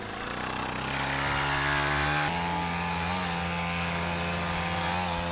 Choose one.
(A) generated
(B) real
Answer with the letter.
B